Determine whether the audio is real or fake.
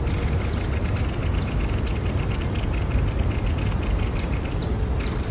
real